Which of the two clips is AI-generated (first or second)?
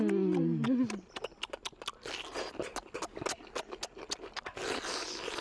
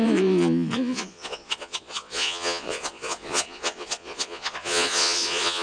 second